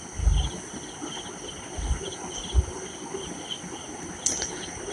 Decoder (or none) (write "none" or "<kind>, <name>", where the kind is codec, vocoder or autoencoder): none